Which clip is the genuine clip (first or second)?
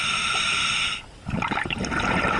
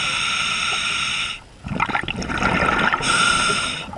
second